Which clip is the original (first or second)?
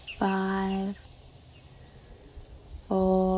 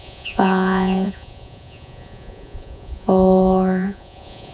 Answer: first